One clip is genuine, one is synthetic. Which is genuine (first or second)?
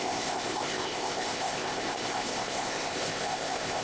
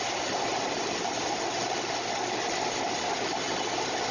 second